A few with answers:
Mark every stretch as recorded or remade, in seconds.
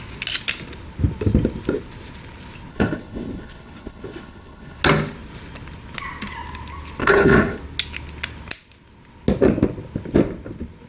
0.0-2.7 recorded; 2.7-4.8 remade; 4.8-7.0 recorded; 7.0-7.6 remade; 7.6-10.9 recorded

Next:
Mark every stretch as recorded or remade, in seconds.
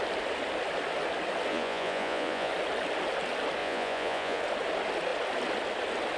0.0-1.5 recorded; 1.5-2.5 remade; 2.5-3.6 recorded; 3.6-4.4 remade; 4.4-6.2 recorded